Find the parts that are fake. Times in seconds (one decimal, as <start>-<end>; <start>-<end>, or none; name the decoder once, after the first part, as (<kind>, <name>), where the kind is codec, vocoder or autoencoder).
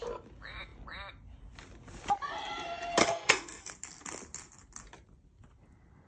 3.0-3.7 (codec, SNAC)